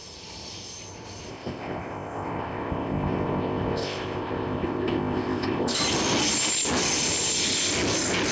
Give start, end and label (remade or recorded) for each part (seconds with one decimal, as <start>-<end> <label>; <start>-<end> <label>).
0.0-1.3 recorded; 1.3-5.8 remade; 5.8-8.3 recorded

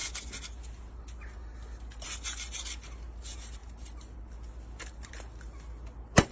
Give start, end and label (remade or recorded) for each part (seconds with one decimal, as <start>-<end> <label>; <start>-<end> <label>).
0.0-6.3 recorded